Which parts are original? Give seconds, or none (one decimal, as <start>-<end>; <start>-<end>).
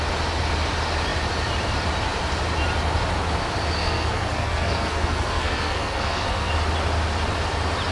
0.0-3.8; 6.5-7.9